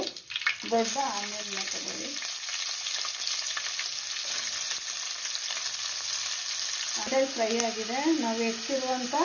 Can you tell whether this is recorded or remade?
recorded